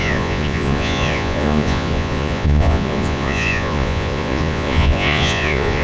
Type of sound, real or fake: fake